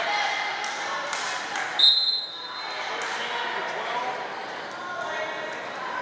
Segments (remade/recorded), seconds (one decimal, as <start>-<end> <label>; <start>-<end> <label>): 0.0-6.0 recorded

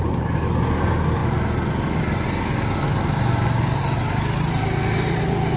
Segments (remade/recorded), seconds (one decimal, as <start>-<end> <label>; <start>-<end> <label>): 0.0-5.6 recorded

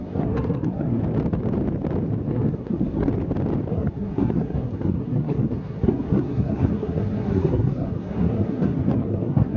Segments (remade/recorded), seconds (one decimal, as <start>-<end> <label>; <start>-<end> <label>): 0.0-1.0 remade; 1.0-2.3 recorded; 2.3-3.1 remade; 3.1-3.7 recorded; 3.7-9.6 remade